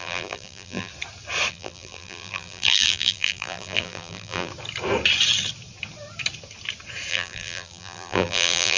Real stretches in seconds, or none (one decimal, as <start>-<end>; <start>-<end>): 0.9-1.5; 4.5-7.1